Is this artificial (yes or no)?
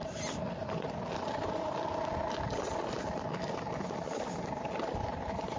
no